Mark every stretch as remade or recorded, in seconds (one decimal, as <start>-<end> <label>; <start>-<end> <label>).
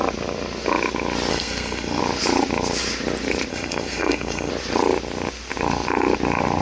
0.0-1.3 recorded; 1.3-2.0 remade; 2.0-3.5 recorded; 3.5-4.5 remade; 4.5-6.6 recorded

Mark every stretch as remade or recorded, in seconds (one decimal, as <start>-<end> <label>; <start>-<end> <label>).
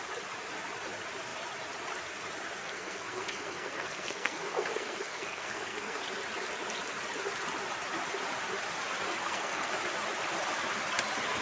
0.0-2.6 recorded; 2.6-6.0 remade; 6.0-9.2 recorded; 9.2-9.7 remade; 9.7-11.4 recorded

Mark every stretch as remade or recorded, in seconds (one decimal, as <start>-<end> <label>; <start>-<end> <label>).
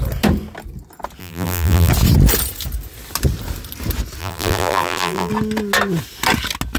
0.0-1.2 recorded; 1.2-1.9 remade; 1.9-4.2 recorded; 4.2-5.3 remade; 5.3-6.8 recorded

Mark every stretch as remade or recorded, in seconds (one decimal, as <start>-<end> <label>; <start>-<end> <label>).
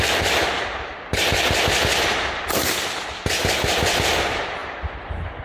0.0-0.9 remade; 0.9-4.1 recorded; 4.1-5.4 remade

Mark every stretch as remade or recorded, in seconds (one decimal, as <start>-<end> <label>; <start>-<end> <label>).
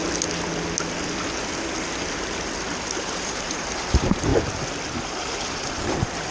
0.0-3.0 recorded; 3.0-4.3 remade; 4.3-5.0 recorded; 5.0-6.3 remade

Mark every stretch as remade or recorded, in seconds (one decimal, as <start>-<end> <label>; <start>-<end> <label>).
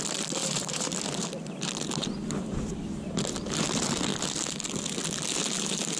0.0-0.4 recorded; 0.4-1.0 remade; 1.0-6.0 recorded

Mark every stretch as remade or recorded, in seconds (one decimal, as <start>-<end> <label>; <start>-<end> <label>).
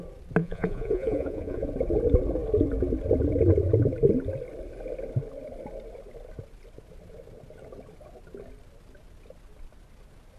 0.0-0.4 recorded; 0.4-1.7 remade; 1.7-10.4 recorded